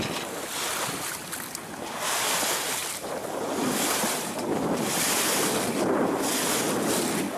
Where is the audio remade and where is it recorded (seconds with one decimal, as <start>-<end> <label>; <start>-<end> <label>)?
0.0-2.8 recorded; 2.8-5.9 remade; 5.9-7.4 recorded

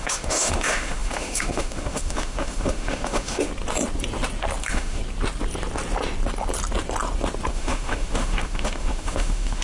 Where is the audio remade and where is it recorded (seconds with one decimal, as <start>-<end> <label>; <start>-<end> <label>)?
0.0-3.5 remade; 3.5-4.6 recorded; 4.6-5.0 remade; 5.0-7.5 recorded; 7.5-9.6 remade

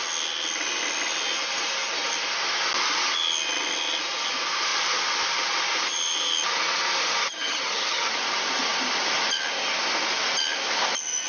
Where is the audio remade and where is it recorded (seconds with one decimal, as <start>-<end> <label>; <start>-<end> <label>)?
0.0-7.2 recorded; 7.2-8.1 remade; 8.1-11.3 recorded